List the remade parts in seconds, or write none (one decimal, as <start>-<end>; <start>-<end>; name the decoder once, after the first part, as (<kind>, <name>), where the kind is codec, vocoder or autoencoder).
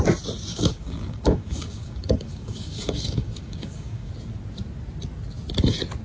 0.5-4.1 (codec, DAC)